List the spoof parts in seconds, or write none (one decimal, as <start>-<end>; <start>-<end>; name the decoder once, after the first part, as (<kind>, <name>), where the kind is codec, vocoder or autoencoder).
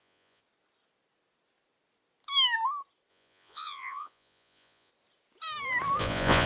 0.0-0.4 (vocoder, Vocos); 3.1-4.9; 6.0-6.5